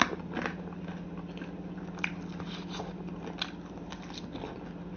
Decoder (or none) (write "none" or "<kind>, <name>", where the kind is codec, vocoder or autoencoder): none